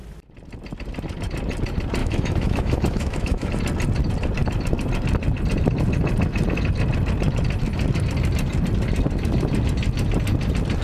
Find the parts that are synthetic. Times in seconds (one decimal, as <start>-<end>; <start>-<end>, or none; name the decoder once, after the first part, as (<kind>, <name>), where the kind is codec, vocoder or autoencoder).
2.0-3.5 (autoencoder, DAC-VAE)